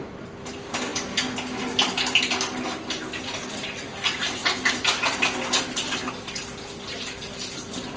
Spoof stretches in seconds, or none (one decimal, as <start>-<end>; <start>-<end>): none